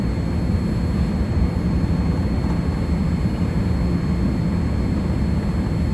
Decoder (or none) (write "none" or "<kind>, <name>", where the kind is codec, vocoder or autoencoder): none